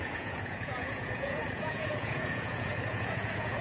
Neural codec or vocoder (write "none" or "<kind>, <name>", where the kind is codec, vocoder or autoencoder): vocoder, Vocos